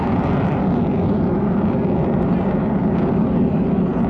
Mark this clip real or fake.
real